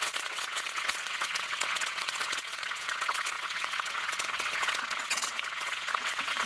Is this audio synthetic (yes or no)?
yes